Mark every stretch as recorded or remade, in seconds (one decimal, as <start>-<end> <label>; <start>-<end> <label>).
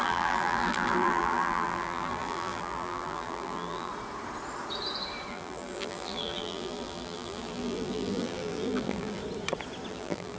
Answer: 0.0-3.9 remade; 3.9-5.3 recorded; 5.3-9.2 remade; 9.2-9.9 recorded; 9.9-10.4 remade